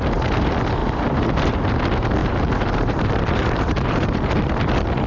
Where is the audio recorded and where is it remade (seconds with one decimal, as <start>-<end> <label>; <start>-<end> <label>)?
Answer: 0.0-0.8 recorded; 0.8-1.6 remade; 1.6-2.2 recorded; 2.2-4.3 remade; 4.3-5.1 recorded

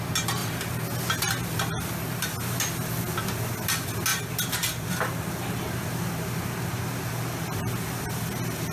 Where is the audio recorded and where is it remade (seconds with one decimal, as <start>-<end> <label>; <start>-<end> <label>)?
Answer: 0.0-8.7 recorded

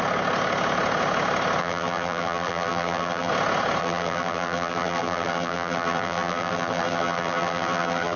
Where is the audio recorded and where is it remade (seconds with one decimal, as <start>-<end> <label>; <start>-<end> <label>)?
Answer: 0.0-1.6 recorded; 1.6-3.3 remade; 3.3-3.8 recorded; 3.8-8.2 remade

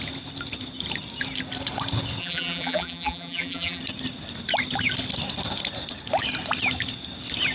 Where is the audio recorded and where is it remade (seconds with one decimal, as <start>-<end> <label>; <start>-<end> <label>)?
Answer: 0.0-2.2 recorded; 2.2-3.8 remade; 3.8-7.5 recorded

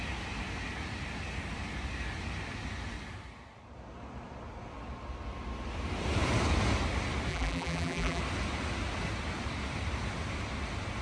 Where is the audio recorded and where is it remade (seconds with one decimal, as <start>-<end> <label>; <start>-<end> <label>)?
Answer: 0.0-7.3 recorded; 7.3-8.2 remade; 8.2-11.0 recorded

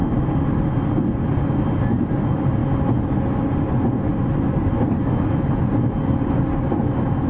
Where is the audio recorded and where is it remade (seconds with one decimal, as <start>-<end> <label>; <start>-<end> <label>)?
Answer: 0.0-7.3 recorded